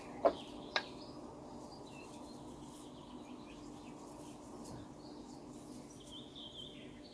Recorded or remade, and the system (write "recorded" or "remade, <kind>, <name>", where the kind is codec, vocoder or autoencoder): recorded